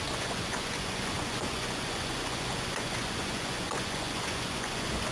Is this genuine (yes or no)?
no